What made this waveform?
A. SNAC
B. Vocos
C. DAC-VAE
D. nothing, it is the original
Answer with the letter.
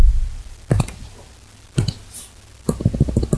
D